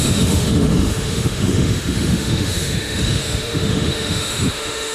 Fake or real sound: fake